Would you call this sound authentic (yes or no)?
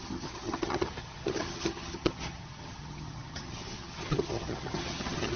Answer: no